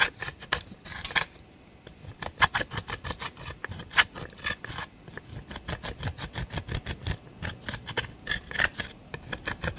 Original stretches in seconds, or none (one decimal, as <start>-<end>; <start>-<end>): none